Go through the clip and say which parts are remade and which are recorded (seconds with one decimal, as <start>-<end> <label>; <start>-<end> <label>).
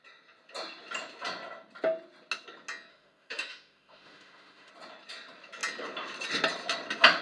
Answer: 0.0-2.9 recorded; 2.9-4.7 remade; 4.7-7.2 recorded